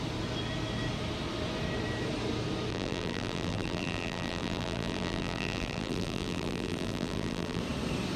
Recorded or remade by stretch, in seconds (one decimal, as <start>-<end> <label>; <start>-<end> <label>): 0.0-2.7 recorded; 2.7-7.6 remade; 7.6-8.2 recorded